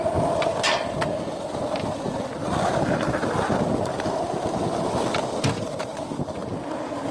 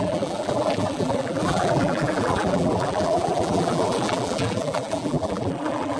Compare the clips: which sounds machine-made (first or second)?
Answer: second